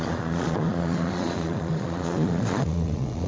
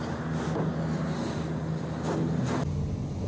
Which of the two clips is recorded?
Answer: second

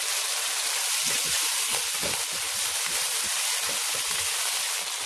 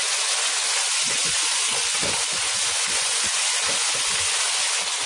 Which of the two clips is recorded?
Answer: first